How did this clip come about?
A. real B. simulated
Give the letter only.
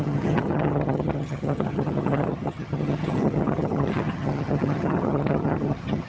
B